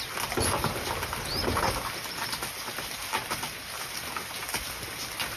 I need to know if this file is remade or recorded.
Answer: recorded